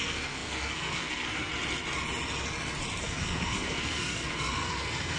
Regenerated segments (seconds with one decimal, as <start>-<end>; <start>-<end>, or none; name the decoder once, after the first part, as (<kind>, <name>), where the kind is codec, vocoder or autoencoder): 0.0-1.5 (codec, SNAC); 3.0-5.2